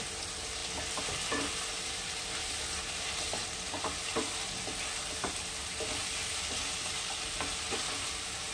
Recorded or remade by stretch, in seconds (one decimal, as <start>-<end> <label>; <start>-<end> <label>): 0.0-8.5 recorded